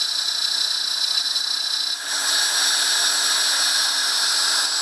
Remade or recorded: recorded